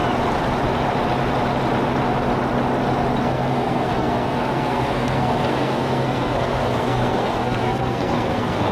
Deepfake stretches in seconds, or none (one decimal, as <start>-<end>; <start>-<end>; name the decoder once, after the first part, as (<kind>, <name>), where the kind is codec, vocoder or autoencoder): 3.2-8.7 (codec, SNAC)